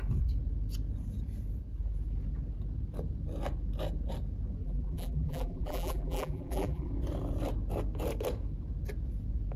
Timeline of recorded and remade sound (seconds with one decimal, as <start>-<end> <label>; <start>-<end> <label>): 0.0-4.6 recorded; 4.6-6.9 remade; 6.9-9.6 recorded